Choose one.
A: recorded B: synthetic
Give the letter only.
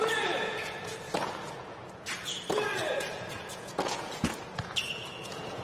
B